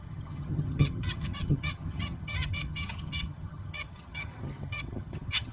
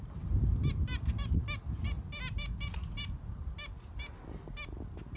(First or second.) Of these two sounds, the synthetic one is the first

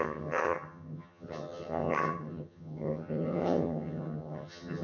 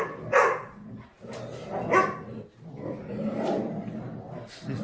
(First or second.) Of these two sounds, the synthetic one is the first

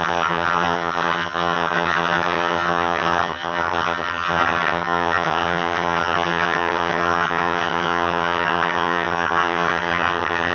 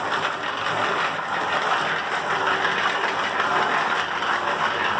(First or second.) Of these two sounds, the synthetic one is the first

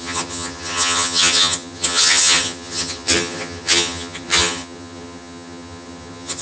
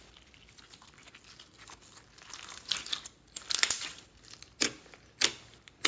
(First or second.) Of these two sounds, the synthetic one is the first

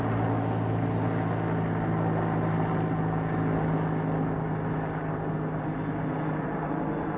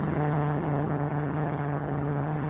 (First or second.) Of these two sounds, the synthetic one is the second